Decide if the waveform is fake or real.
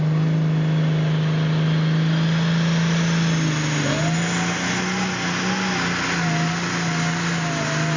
real